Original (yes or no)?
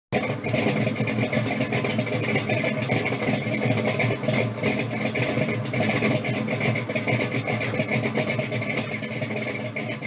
yes